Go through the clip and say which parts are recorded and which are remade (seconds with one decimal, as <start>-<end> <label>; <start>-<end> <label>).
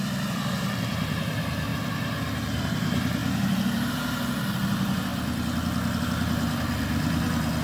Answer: 0.0-1.7 remade; 1.7-2.7 recorded; 2.7-5.1 remade; 5.1-6.0 recorded; 6.0-7.6 remade